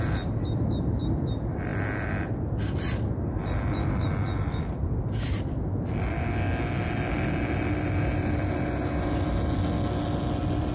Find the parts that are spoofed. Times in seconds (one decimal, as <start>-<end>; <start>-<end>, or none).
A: none